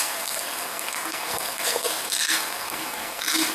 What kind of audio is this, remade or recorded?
remade